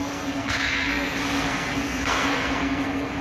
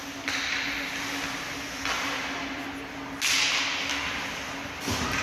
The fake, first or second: first